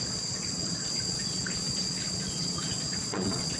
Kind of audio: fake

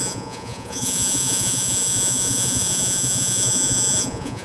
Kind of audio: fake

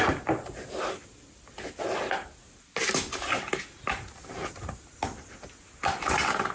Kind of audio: real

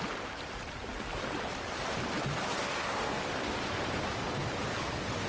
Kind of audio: real